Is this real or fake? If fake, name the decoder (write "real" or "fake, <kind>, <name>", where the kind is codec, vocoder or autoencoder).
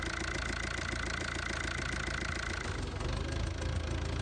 real